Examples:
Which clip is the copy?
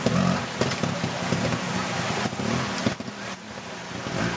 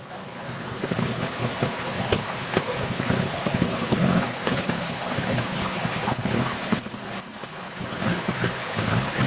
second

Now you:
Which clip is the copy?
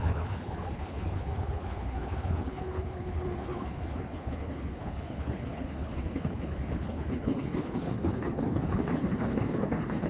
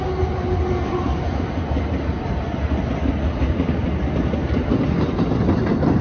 first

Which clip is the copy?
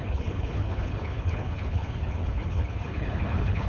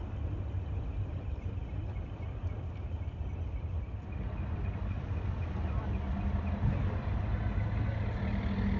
first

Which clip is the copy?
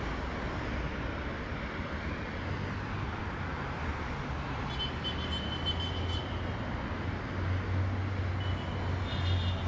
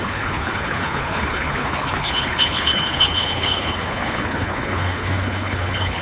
second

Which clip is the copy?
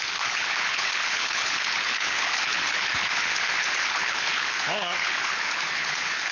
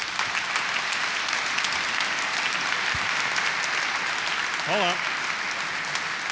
first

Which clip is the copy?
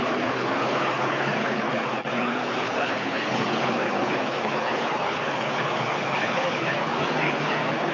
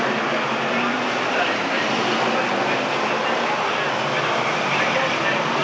first